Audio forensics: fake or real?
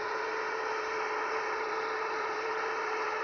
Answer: real